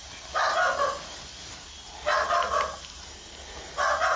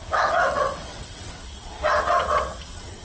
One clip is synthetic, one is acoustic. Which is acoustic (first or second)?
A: first